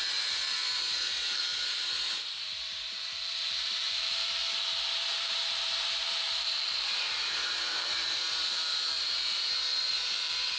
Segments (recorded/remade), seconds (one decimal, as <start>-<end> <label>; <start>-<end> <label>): 0.0-4.4 remade; 4.4-5.1 recorded; 5.1-10.6 remade